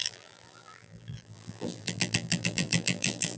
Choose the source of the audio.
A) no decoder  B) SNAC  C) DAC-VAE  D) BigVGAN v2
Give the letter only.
D